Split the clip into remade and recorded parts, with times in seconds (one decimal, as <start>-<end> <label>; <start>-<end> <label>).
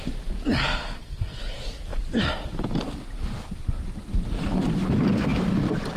0.0-0.8 recorded; 0.8-1.4 remade; 1.4-6.0 recorded